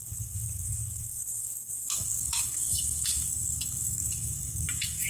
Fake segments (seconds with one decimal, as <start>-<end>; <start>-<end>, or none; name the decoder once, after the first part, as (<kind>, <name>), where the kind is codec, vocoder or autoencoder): 0.0-5.1 (codec, DAC)